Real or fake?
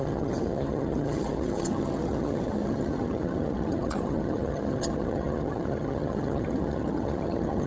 fake